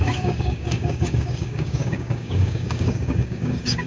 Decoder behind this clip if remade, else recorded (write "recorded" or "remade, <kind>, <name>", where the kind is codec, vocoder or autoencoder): remade, codec, DAC